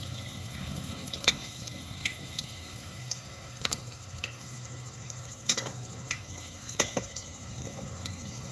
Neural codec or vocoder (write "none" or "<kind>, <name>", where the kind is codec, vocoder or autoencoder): codec, SNAC